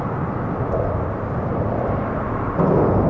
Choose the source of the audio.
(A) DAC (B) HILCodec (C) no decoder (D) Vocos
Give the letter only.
C